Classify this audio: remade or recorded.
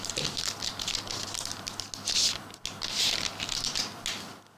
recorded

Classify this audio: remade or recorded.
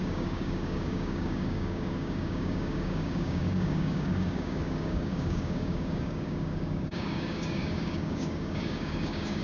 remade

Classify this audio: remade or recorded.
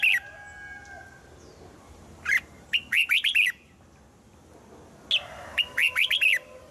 recorded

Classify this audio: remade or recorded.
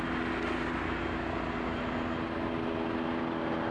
recorded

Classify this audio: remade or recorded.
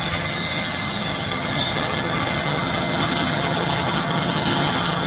remade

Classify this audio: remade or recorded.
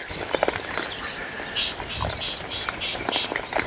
recorded